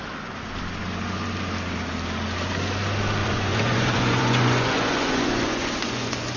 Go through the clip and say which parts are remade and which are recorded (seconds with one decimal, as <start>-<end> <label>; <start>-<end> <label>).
0.0-3.2 recorded; 3.2-6.4 remade